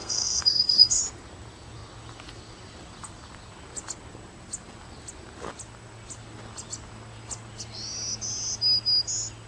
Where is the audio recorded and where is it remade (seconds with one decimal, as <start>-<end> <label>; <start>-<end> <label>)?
0.0-1.0 remade; 1.0-9.5 recorded